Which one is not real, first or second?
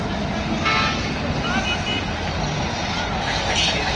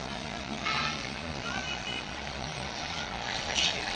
second